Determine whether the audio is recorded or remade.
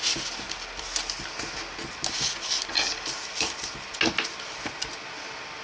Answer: recorded